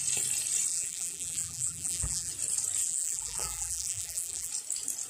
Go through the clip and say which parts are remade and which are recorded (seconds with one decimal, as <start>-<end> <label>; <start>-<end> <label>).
0.0-0.7 recorded; 0.7-2.3 remade; 2.3-2.8 recorded; 2.8-4.5 remade; 4.5-5.1 recorded